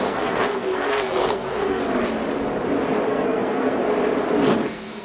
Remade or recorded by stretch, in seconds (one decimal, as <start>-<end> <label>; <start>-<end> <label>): 0.0-1.8 remade; 1.8-3.1 recorded; 3.1-3.8 remade; 3.8-4.5 recorded; 4.5-5.0 remade

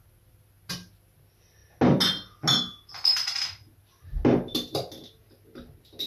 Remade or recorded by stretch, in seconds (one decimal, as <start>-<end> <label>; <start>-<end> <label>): 0.0-6.1 recorded

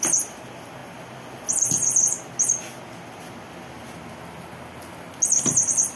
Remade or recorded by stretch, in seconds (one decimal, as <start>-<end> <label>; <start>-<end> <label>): 0.0-6.0 recorded

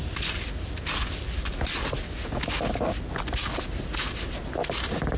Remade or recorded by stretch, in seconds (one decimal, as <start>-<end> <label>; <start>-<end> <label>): 0.0-5.2 recorded

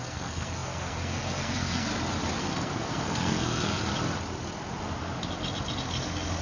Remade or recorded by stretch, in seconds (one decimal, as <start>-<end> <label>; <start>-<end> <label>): 0.0-1.9 remade; 1.9-2.4 recorded; 2.4-3.9 remade; 3.9-6.4 recorded

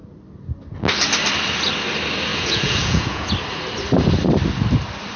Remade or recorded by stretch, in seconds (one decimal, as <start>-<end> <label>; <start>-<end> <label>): 0.0-2.3 recorded; 2.3-3.3 remade; 3.3-5.2 recorded

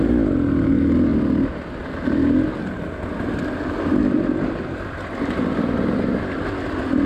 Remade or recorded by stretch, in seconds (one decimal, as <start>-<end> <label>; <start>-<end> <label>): 0.0-7.1 recorded